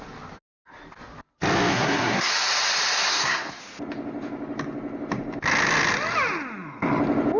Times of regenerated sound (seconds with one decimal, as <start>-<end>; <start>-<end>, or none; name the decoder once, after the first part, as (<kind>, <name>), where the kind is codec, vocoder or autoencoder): 1.7-2.3 (codec, SNAC); 3.1-3.6